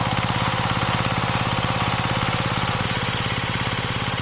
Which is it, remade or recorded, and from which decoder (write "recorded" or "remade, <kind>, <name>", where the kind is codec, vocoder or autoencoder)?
recorded